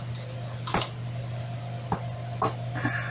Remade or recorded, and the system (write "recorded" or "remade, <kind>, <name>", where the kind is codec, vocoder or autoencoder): recorded